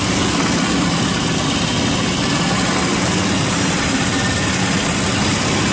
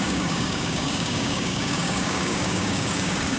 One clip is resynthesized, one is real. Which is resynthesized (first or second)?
second